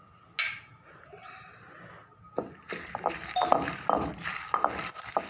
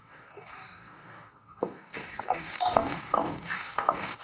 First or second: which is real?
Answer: first